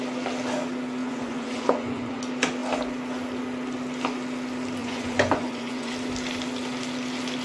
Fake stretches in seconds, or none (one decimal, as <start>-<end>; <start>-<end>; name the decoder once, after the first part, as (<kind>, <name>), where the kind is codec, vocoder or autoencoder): 1.0-2.2 (vocoder, Vocos); 4.8-5.9